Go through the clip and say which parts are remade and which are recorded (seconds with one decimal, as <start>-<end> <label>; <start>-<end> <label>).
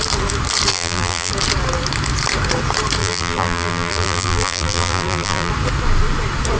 0.0-0.7 recorded; 0.7-1.3 remade; 1.3-3.0 recorded; 3.0-5.5 remade; 5.5-6.6 recorded